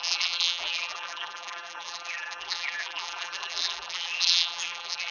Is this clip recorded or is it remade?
remade